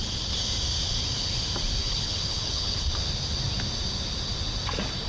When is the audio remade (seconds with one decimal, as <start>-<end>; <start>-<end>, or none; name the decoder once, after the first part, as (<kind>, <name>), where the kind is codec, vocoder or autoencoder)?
1.8-2.8 (codec, HILCodec)